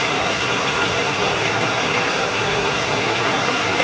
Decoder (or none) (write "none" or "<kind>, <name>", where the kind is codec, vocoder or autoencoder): codec, SNAC